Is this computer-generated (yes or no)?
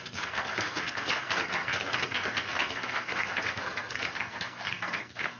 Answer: yes